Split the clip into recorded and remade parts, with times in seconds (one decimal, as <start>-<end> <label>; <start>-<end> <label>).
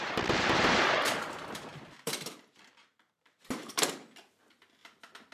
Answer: 0.0-1.7 recorded; 1.7-3.7 remade; 3.7-5.3 recorded